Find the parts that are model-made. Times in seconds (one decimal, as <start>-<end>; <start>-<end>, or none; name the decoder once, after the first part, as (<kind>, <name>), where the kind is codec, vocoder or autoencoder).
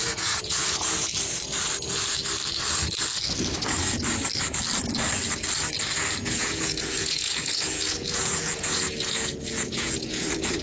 0.0-1.1 (vocoder, Vocos); 6.3-10.6